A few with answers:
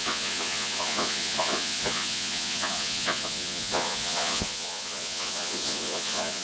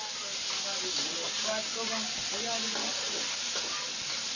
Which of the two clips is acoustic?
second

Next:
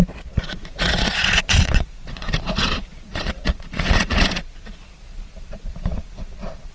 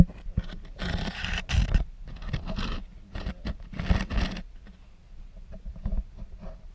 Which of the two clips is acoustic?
second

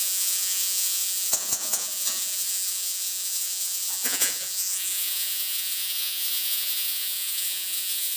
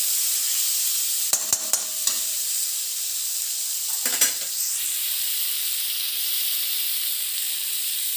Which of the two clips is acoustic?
second